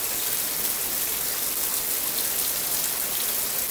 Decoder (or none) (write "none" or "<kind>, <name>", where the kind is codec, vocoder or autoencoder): none